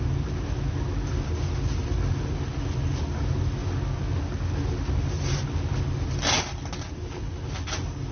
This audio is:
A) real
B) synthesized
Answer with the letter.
A